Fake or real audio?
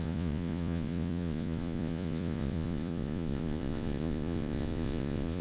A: fake